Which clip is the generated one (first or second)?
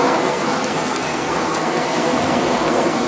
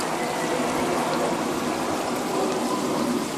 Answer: first